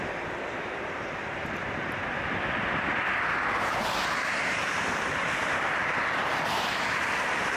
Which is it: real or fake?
fake